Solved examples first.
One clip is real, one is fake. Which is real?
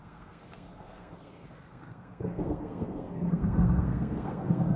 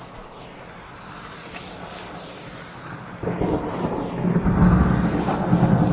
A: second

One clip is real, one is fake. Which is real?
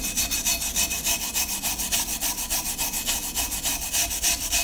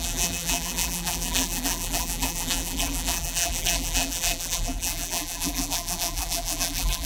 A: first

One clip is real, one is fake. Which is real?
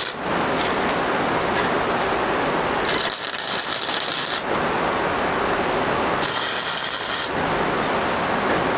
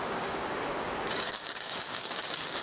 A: first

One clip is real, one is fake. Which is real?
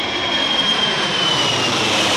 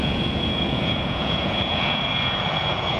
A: first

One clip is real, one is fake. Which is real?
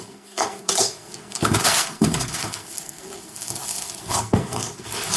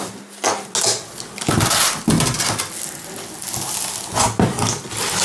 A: second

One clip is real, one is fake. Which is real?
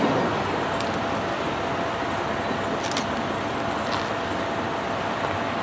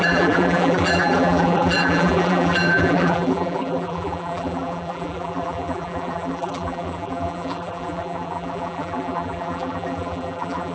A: first